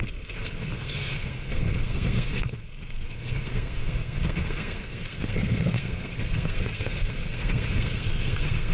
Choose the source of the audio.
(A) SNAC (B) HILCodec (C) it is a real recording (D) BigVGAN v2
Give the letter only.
A